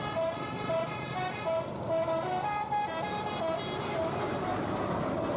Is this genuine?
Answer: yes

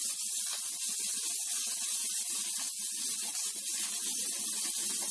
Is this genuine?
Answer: yes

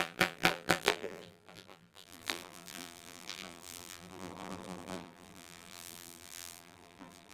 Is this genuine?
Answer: no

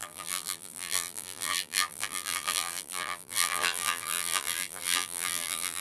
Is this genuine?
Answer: no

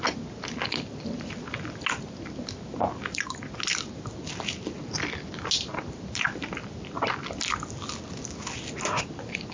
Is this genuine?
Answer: yes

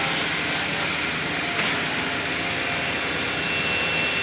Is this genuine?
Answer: yes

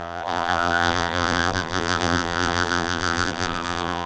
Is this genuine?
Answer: no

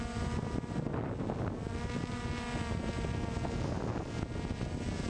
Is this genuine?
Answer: yes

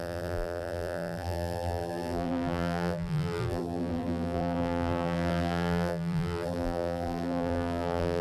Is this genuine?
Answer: no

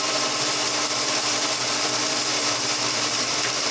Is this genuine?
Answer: no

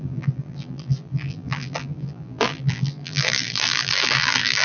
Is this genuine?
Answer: no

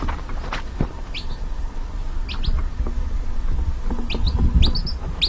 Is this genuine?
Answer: yes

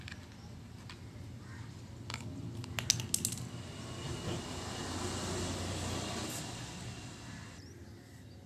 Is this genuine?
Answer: yes